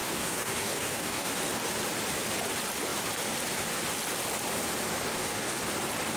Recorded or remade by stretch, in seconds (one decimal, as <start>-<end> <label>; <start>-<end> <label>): 0.0-1.3 remade; 1.3-5.1 recorded; 5.1-5.6 remade; 5.6-6.2 recorded